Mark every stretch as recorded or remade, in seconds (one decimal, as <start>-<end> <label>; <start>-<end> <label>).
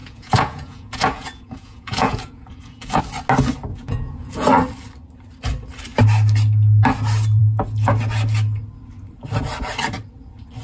0.0-3.0 remade; 3.0-3.7 recorded; 3.7-4.5 remade; 4.5-10.6 recorded